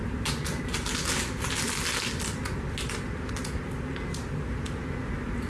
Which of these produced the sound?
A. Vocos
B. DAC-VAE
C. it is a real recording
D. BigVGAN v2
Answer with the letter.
C